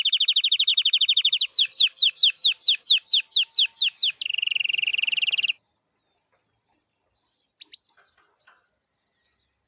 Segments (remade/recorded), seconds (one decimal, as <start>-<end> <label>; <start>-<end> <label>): 0.0-0.7 recorded; 0.7-2.1 remade; 2.1-4.9 recorded; 4.9-7.6 remade; 7.6-9.7 recorded